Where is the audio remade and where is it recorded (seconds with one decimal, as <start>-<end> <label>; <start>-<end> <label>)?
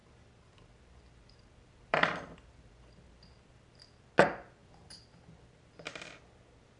0.0-4.1 remade; 4.1-4.6 recorded; 4.6-5.9 remade; 5.9-6.8 recorded